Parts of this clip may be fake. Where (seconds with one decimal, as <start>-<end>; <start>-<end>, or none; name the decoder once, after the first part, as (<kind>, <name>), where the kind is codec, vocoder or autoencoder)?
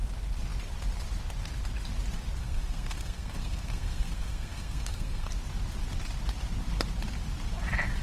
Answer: 2.4-5.3 (codec, SNAC)